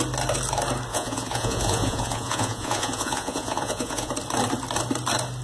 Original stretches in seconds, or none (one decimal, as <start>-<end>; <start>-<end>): 0.0-0.9; 4.1-5.4